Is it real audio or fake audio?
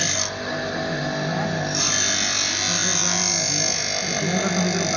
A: real